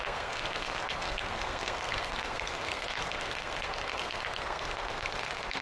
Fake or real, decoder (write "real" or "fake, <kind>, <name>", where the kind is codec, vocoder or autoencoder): fake, codec, SNAC